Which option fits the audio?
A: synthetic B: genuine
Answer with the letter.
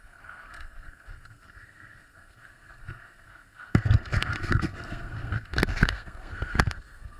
A